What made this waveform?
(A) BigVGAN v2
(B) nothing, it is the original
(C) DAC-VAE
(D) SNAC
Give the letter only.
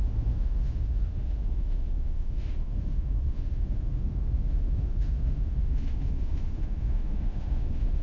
C